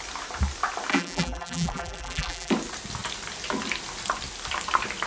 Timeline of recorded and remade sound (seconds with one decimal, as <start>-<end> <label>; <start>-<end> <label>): 0.0-0.9 recorded; 0.9-2.5 remade; 2.5-5.1 recorded